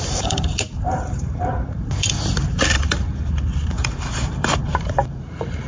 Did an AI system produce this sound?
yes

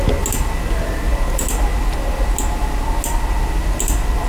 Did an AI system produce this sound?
no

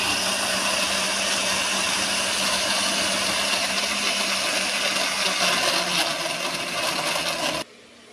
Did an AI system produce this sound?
no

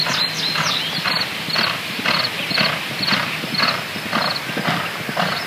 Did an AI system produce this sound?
no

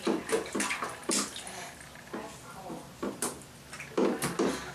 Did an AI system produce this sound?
no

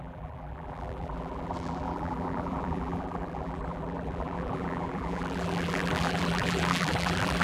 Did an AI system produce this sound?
yes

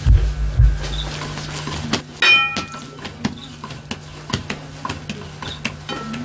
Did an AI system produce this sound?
no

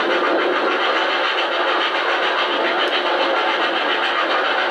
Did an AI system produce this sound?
no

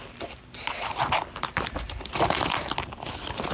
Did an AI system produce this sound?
yes